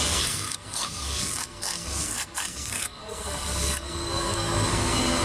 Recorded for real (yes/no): no